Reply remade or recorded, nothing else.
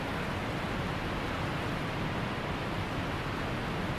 recorded